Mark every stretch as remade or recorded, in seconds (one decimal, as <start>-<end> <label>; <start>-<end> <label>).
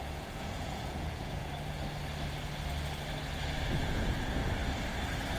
0.0-1.5 remade; 1.5-3.7 recorded; 3.7-4.4 remade; 4.4-5.4 recorded